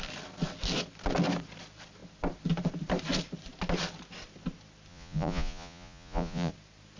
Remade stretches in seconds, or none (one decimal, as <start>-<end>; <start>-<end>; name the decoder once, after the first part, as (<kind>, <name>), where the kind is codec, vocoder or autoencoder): 4.9-6.5 (vocoder, Vocos)